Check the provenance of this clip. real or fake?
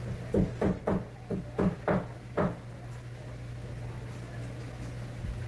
real